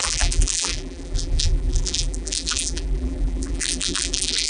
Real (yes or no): no